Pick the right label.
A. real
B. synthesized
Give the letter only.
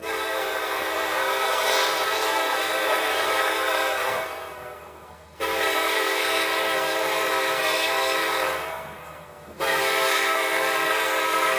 B